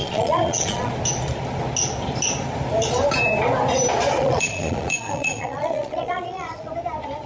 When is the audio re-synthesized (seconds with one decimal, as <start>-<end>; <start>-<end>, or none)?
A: 0.0-0.9; 4.2-6.7

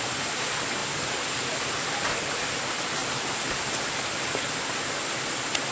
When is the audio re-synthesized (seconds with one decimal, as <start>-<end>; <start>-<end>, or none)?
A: none

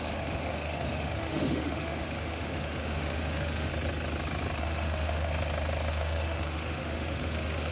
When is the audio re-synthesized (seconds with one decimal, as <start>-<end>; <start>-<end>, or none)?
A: 0.0-3.7; 4.6-5.3; 5.9-7.7